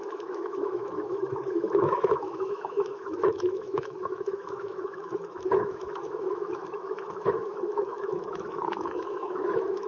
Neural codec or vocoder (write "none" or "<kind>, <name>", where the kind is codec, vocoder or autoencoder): autoencoder, DAC-VAE